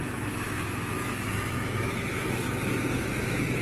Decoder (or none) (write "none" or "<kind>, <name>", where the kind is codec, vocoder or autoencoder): autoencoder, DAC-VAE